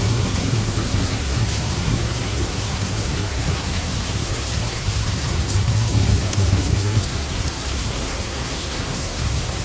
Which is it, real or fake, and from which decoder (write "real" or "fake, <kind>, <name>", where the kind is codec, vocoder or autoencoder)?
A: fake, codec, SNAC